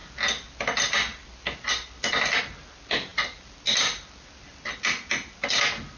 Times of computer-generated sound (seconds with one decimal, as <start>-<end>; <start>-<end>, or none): none